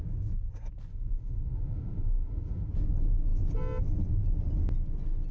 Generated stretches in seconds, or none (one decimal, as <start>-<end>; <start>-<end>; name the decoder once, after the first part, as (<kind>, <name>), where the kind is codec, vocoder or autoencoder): 0.9-2.7 (autoencoder, DAC-VAE)